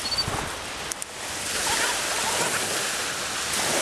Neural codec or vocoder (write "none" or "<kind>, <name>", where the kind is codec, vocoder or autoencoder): none